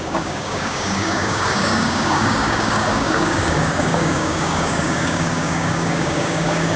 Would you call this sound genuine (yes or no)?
no